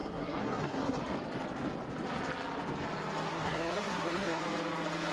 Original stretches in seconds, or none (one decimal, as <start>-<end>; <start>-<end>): 1.0-3.3; 4.4-5.1